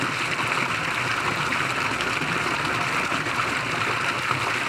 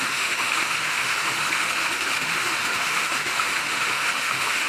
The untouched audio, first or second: first